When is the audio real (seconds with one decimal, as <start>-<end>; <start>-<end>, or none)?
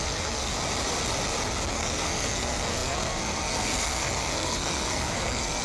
0.5-1.7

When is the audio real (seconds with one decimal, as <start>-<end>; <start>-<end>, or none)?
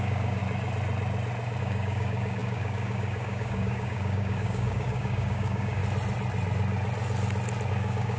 0.4-1.6; 5.8-7.7